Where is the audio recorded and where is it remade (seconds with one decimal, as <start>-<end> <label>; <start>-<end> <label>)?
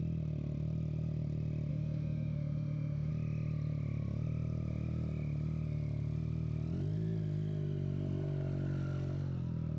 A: 0.0-1.7 recorded; 1.7-3.1 remade; 3.1-9.8 recorded